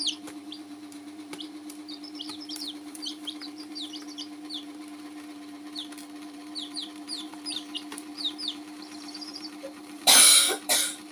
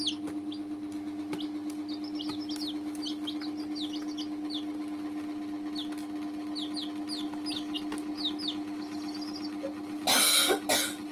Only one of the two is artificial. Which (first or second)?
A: first